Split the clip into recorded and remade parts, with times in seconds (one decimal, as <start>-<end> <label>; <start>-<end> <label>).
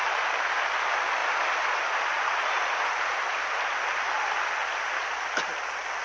0.0-6.0 recorded